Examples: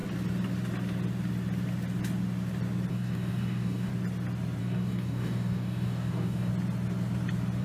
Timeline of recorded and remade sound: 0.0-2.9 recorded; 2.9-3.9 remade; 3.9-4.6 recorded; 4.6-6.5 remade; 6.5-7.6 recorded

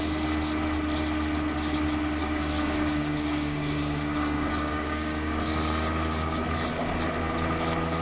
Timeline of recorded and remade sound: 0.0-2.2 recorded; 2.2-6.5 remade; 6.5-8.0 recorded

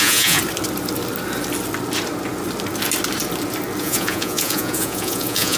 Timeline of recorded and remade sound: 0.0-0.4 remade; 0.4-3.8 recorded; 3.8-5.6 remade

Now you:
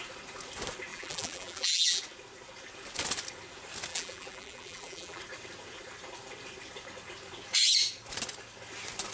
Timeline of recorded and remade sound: 0.0-0.9 recorded; 0.9-2.0 remade; 2.0-3.9 recorded; 3.9-5.2 remade; 5.2-9.1 recorded

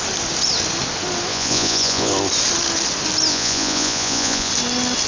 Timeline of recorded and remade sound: 0.0-1.3 recorded; 1.3-2.1 remade; 2.1-3.3 recorded; 3.3-4.5 remade; 4.5-5.1 recorded

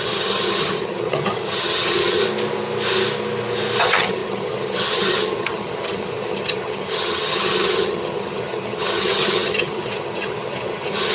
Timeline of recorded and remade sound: 0.0-2.2 remade; 2.2-3.8 recorded; 3.8-11.1 remade